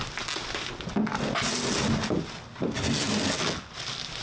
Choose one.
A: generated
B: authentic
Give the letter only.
B